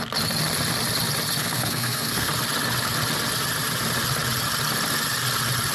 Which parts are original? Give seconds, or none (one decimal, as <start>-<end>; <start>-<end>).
0.0-1.4; 2.3-5.7